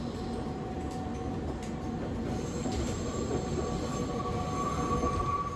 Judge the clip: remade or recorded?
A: remade